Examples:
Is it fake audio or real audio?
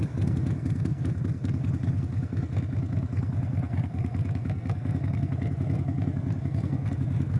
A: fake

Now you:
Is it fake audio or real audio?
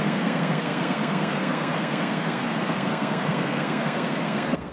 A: fake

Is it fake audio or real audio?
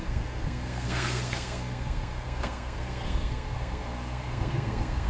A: fake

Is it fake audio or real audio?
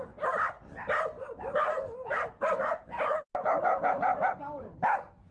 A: real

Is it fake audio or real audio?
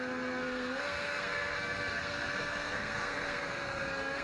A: fake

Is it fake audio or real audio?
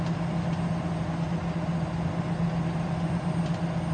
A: real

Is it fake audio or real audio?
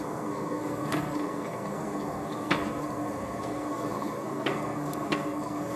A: fake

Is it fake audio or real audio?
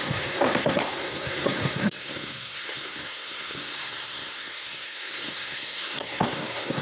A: fake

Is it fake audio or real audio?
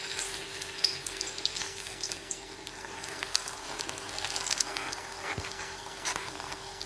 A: fake